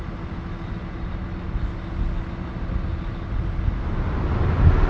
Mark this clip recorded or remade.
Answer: recorded